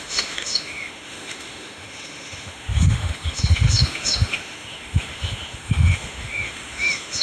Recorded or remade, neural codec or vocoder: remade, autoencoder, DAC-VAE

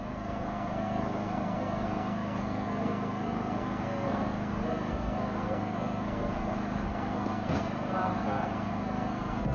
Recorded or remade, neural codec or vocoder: remade, codec, SNAC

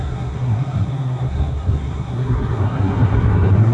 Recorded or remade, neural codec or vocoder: remade, codec, SNAC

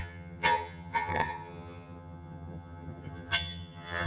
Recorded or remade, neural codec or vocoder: remade, vocoder, HiFi-GAN